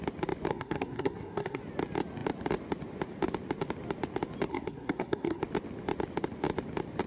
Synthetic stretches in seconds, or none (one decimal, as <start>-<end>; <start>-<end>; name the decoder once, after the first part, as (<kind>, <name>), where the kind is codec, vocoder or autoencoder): 0.5-1.6 (codec, SNAC); 4.5-5.4